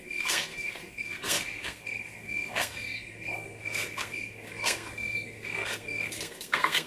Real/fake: fake